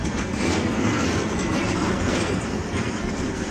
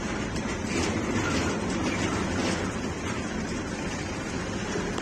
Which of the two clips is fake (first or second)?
first